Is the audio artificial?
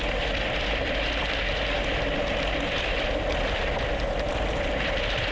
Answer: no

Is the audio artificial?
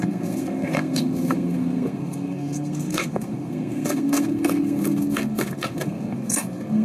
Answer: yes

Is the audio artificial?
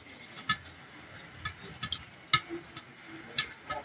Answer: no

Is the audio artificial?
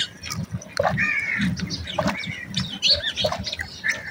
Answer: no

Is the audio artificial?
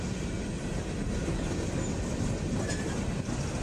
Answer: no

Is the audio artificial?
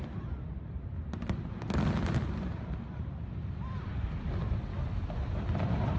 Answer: no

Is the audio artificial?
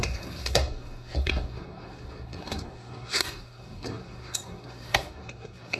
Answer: yes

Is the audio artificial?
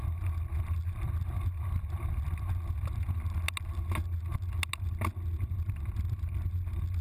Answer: no